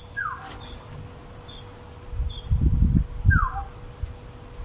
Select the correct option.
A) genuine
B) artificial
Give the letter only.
A